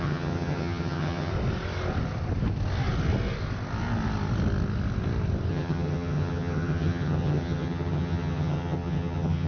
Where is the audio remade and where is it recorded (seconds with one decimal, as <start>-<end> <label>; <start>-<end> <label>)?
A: 0.0-1.3 remade; 1.3-5.5 recorded; 5.5-9.5 remade